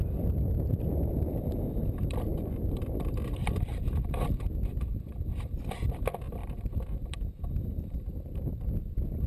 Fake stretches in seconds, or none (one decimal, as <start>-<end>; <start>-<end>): 0.0-6.4; 7.1-9.3